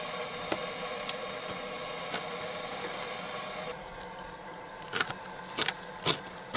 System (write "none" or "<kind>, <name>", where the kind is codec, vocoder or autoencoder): none